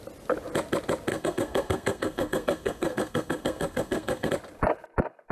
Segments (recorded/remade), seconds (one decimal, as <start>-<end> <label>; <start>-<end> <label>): 0.0-1.1 recorded; 1.1-4.3 remade; 4.3-5.3 recorded